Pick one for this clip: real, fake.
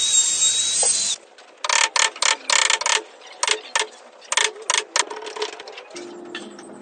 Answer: real